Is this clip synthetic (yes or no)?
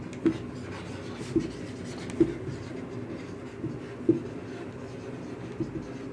no